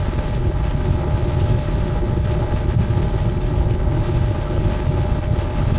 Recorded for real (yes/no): no